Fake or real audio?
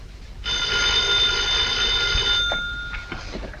real